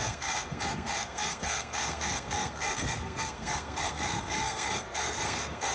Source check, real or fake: fake